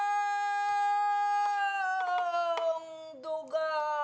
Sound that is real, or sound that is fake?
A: real